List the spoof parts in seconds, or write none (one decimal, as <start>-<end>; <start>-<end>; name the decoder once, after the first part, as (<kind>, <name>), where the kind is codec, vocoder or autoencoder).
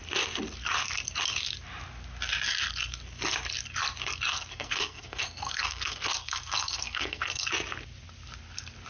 4.3-7.5 (codec, SNAC)